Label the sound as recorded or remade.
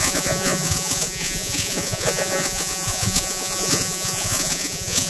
remade